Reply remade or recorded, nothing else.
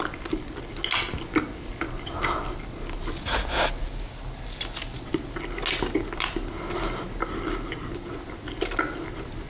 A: recorded